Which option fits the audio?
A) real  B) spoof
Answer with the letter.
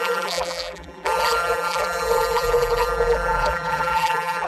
B